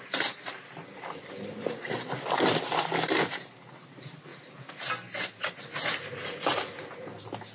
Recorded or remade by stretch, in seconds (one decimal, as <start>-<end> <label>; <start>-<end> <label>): 0.0-4.3 recorded; 4.3-5.5 remade; 5.5-7.5 recorded